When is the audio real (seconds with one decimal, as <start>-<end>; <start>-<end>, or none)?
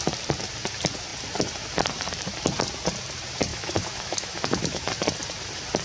0.0-3.5; 4.9-5.8